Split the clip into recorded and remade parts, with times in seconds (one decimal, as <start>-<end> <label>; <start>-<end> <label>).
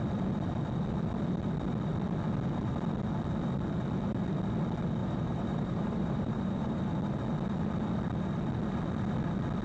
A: 0.0-5.0 recorded; 5.0-6.8 remade; 6.8-9.6 recorded